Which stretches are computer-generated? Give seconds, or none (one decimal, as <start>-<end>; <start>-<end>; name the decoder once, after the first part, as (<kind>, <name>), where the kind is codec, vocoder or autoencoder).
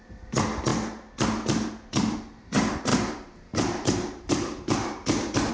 2.9-5.5 (vocoder, BigVGAN v2)